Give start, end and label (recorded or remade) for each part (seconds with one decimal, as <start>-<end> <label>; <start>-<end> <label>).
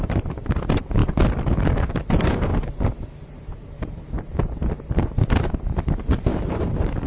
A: 0.0-1.0 remade; 1.0-2.1 recorded; 2.1-2.5 remade; 2.5-5.4 recorded; 5.4-7.1 remade